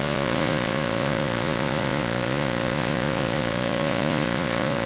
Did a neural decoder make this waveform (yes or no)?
yes